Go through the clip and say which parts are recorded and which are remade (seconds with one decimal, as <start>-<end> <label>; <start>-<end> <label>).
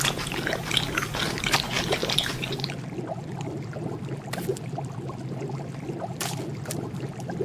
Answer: 0.0-4.5 recorded; 4.5-6.8 remade; 6.8-7.4 recorded